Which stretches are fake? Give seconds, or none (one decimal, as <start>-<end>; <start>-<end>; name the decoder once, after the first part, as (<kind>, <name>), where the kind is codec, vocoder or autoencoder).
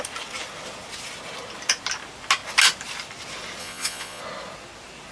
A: 3.6-4.2 (vocoder, Vocos)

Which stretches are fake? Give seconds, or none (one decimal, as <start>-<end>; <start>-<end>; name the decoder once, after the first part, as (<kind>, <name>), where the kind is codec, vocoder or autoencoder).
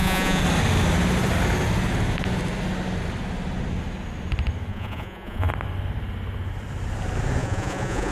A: 0.0-0.4 (vocoder, Vocos); 4.7-5.5; 7.4-8.1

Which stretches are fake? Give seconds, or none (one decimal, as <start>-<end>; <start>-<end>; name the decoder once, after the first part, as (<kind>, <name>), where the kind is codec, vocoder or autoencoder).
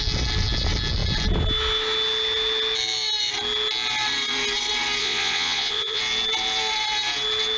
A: 5.0-6.0 (vocoder, Vocos)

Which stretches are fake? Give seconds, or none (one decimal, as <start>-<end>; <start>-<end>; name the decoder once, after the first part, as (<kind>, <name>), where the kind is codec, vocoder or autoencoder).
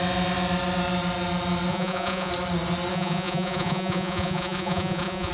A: 1.7-2.3 (vocoder, Vocos); 2.9-5.3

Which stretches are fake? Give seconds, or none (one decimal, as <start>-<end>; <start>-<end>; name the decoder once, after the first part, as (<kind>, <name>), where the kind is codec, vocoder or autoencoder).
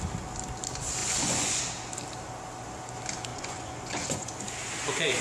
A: 1.0-1.6 (vocoder, Vocos); 3.3-4.3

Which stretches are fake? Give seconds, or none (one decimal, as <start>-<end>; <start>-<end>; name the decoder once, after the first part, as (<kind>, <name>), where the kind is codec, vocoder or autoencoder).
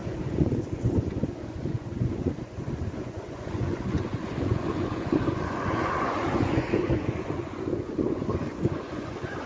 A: 0.0-9.5 (vocoder, Vocos)